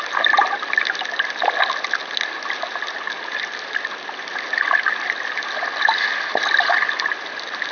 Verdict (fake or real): real